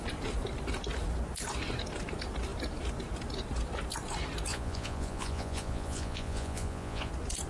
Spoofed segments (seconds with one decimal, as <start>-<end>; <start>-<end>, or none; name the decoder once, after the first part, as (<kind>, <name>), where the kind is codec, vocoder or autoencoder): 4.5-7.1 (vocoder, Vocos)